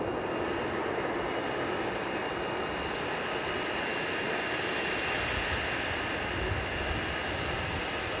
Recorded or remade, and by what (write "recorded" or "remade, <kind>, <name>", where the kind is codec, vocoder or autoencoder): recorded